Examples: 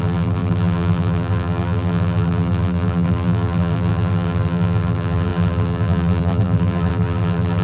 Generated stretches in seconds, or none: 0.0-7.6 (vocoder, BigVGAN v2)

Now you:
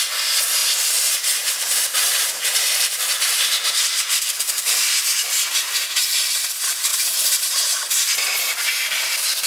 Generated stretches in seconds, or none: 0.6-5.0 (vocoder, BigVGAN v2); 6.9-7.9

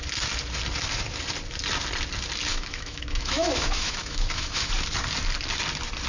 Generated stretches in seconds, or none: 2.5-4.7 (autoencoder, DAC-VAE)

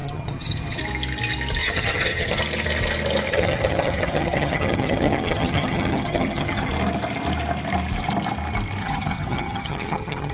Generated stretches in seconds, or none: 0.0-0.8 (vocoder, HiFi-GAN); 1.6-2.4; 3.3-6.7; 8.8-10.3